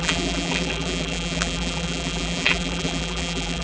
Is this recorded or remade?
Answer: remade